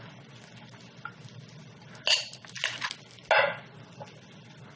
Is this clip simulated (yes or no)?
no